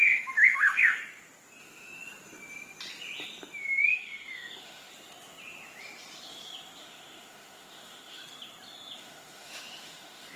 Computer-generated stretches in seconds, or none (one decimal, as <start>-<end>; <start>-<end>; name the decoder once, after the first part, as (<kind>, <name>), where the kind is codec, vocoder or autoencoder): 0.0-1.0 (autoencoder, DAC-VAE); 1.6-2.0; 3.9-4.9; 6.8-8.2; 9.0-10.4